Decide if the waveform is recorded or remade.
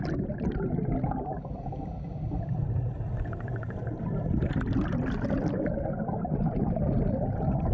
recorded